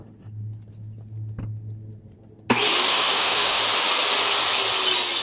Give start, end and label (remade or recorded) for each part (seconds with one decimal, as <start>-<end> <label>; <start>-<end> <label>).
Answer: 0.0-2.9 recorded; 2.9-3.6 remade; 3.6-5.2 recorded